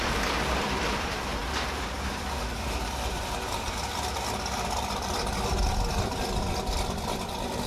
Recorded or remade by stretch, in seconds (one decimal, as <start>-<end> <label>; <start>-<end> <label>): 0.0-1.4 remade; 1.4-2.1 recorded; 2.1-7.7 remade